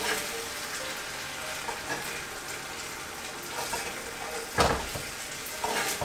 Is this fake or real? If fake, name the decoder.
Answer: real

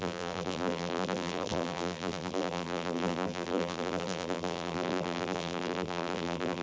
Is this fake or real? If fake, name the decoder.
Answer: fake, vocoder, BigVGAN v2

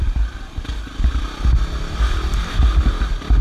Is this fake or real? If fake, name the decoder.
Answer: real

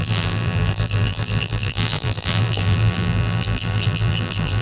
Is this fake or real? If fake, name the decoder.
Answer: fake, vocoder, BigVGAN v2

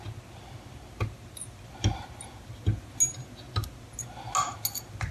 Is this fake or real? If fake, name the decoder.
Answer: real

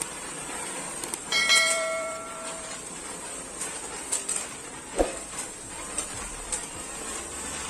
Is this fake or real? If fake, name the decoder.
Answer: fake, vocoder, BigVGAN v2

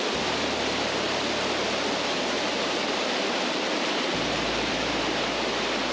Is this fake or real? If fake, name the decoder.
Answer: fake, vocoder, BigVGAN v2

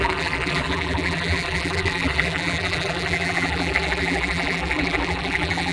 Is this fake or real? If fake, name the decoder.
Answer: fake, vocoder, BigVGAN v2